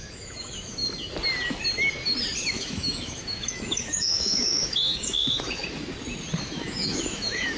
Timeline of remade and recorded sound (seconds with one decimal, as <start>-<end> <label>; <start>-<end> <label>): 0.0-0.8 remade; 0.8-2.5 recorded; 2.5-5.6 remade; 5.6-6.4 recorded; 6.4-7.6 remade